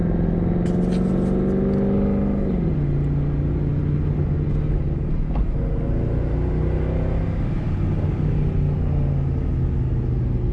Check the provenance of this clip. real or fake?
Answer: real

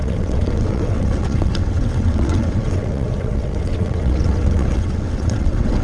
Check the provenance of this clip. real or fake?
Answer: fake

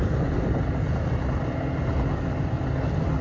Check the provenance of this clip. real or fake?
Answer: real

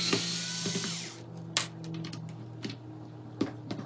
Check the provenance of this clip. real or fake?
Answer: real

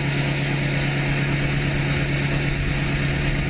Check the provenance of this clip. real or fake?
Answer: real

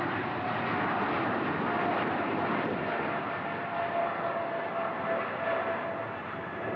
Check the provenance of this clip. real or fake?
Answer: real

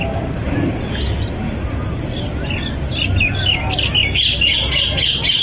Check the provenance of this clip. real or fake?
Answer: real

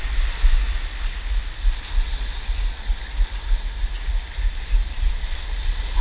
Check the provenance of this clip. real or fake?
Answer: real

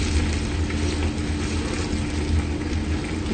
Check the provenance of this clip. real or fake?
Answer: real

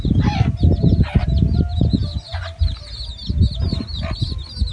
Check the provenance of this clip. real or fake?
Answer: real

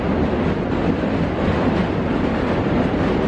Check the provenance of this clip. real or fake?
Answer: real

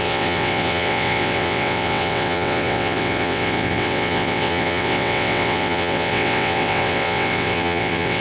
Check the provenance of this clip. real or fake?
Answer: fake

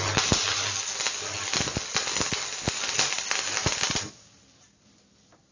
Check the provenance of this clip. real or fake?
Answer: real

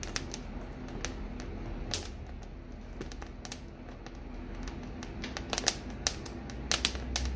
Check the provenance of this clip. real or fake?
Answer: real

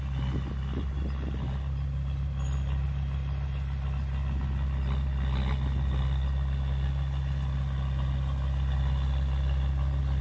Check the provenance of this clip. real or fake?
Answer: real